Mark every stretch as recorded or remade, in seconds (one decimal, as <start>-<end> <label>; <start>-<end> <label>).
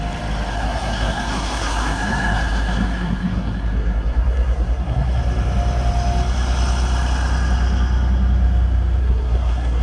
0.0-0.5 recorded; 0.5-5.2 remade; 5.2-9.0 recorded; 9.0-9.8 remade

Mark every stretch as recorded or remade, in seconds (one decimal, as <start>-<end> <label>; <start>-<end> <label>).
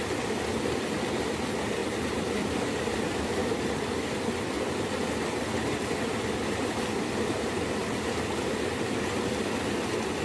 0.0-1.8 recorded; 1.8-3.7 remade; 3.7-10.2 recorded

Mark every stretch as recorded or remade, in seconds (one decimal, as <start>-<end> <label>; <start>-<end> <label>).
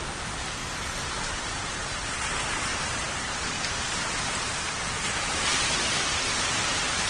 0.0-0.6 recorded; 0.6-2.1 remade; 2.1-2.7 recorded; 2.7-6.3 remade; 6.3-7.1 recorded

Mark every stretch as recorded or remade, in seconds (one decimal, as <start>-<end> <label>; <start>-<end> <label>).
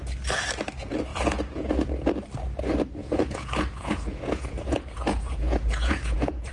0.0-1.1 recorded; 1.1-1.7 remade; 1.7-3.0 recorded; 3.0-6.5 remade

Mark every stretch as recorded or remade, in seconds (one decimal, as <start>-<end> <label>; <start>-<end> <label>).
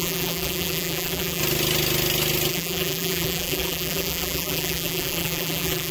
0.0-1.4 remade; 1.4-2.5 recorded; 2.5-5.9 remade